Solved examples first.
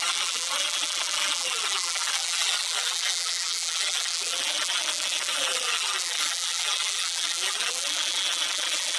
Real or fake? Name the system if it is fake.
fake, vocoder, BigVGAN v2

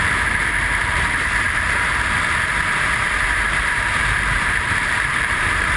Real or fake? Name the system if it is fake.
fake, vocoder, BigVGAN v2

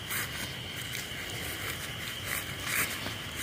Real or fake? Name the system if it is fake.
real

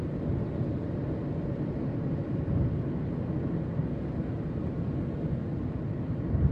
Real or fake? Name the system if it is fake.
real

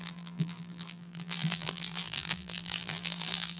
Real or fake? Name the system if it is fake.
fake, vocoder, BigVGAN v2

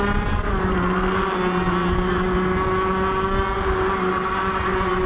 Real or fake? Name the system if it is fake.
real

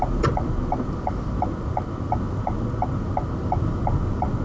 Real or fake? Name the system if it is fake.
real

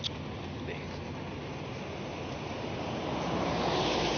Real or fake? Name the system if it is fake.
real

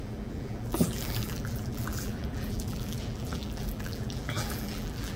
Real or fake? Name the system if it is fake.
fake, vocoder, BigVGAN v2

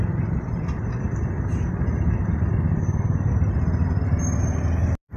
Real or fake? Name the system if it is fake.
real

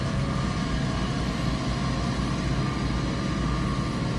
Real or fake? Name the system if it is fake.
real